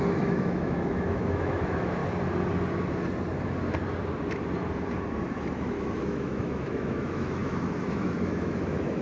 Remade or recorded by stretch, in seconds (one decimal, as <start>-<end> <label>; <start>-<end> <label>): 0.0-2.0 remade; 2.0-5.6 recorded; 5.6-9.0 remade